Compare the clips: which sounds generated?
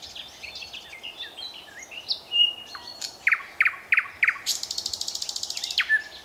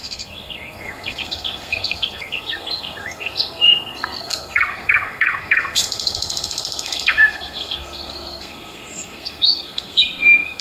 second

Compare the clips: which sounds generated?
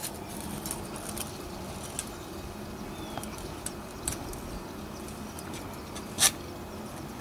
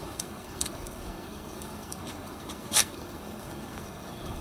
second